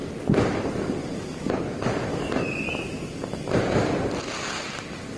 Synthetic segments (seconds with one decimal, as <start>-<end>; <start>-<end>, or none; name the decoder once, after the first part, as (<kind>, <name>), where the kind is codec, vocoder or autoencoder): 0.0-1.4 (vocoder, BigVGAN v2)